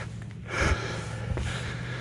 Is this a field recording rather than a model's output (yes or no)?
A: yes